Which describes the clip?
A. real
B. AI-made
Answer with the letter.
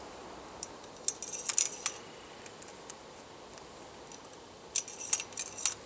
A